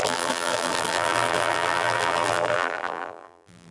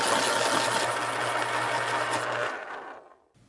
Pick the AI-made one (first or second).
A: first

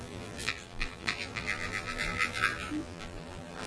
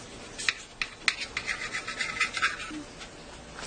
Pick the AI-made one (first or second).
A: first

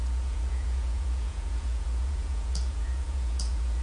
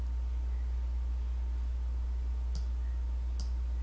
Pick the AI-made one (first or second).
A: first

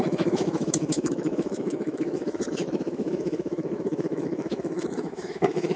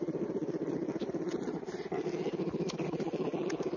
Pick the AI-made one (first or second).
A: first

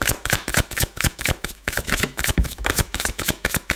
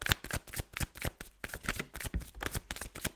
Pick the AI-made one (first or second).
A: first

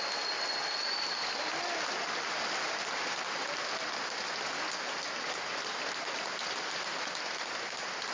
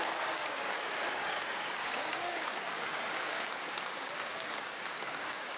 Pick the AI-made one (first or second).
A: second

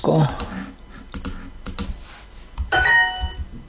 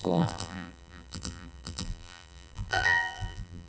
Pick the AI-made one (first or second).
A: second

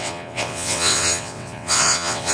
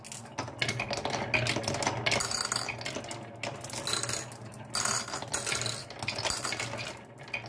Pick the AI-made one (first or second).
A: first